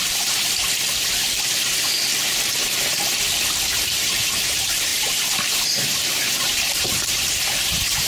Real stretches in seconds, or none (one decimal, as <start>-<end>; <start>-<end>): 1.8-3.8